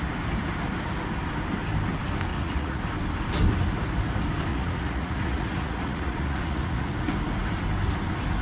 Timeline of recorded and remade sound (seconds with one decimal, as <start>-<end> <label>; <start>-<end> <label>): 0.0-2.3 recorded; 2.3-2.8 remade; 2.8-4.5 recorded; 4.5-6.9 remade; 6.9-8.4 recorded

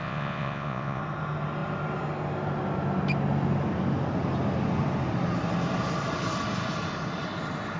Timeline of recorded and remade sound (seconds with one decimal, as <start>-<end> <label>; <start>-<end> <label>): 0.0-1.0 remade; 1.0-7.8 recorded

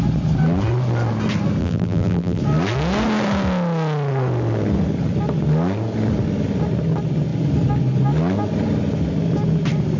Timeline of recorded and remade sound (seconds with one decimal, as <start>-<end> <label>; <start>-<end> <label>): 0.0-1.6 recorded; 1.6-2.4 remade; 2.4-10.0 recorded

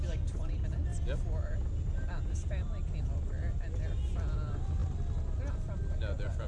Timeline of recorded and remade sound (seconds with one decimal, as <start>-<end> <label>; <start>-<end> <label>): 0.0-6.5 recorded

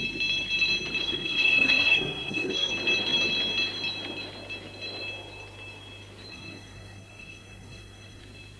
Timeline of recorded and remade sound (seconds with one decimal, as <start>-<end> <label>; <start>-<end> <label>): 0.0-1.0 recorded; 1.0-2.7 remade; 2.7-6.3 recorded; 6.3-8.2 remade; 8.2-8.6 recorded